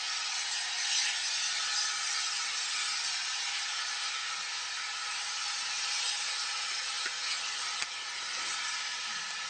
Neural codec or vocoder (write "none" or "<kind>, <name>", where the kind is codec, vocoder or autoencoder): none